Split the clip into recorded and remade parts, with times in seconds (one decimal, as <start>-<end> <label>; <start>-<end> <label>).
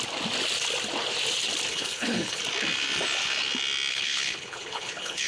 0.0-1.7 recorded; 1.7-2.4 remade; 2.4-3.9 recorded; 3.9-5.3 remade